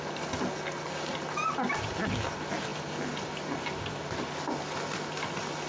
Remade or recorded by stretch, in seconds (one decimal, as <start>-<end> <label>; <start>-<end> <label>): 0.0-5.7 recorded